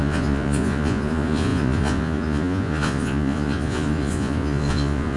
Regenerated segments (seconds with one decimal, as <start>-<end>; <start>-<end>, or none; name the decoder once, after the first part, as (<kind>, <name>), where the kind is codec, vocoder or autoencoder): 0.0-5.2 (vocoder, Vocos)